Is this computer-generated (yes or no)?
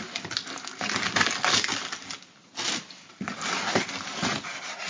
no